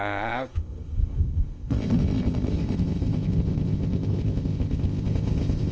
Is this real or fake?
fake